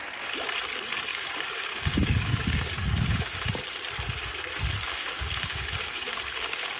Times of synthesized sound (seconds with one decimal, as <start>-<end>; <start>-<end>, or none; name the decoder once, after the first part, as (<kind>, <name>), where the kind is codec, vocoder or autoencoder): 1.1-3.7 (codec, DAC); 4.8-6.8